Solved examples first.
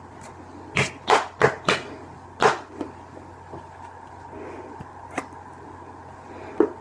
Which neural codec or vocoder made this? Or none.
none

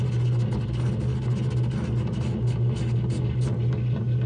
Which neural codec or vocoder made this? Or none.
none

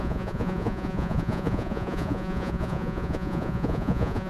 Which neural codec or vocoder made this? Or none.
vocoder, Vocos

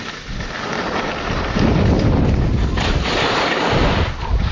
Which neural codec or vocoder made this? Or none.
vocoder, BigVGAN v2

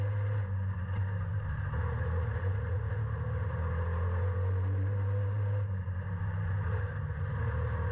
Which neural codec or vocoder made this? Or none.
none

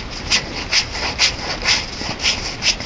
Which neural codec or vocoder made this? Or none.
none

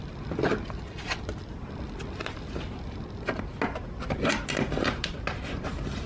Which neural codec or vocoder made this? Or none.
none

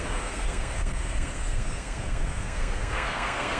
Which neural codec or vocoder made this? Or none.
codec, SNAC